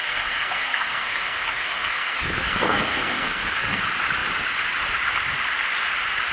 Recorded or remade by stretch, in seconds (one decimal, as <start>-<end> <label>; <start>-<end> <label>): 0.0-3.8 remade; 3.8-6.3 recorded